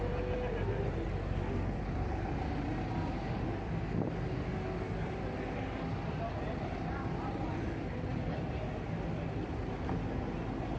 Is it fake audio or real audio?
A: real